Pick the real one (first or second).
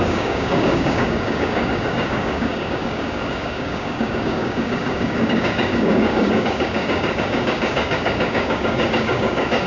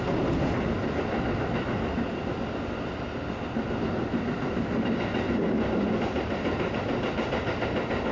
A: second